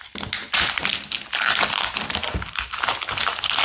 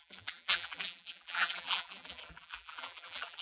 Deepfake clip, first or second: second